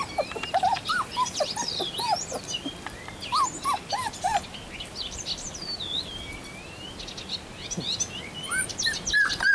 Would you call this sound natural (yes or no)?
yes